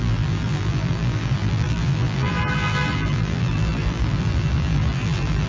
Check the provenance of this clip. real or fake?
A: fake